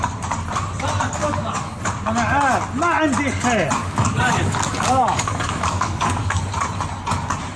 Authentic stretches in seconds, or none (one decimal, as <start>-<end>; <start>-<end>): 0.0-1.2; 1.8-3.8; 6.4-7.6